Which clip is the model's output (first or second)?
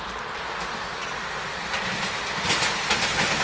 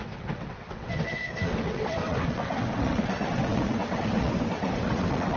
second